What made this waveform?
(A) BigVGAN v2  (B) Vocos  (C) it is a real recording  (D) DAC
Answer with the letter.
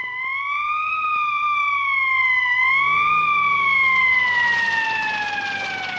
C